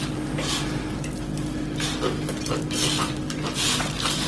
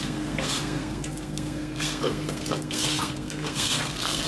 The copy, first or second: second